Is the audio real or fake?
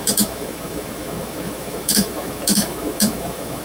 fake